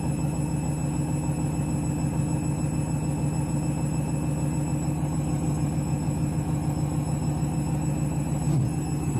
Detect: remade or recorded recorded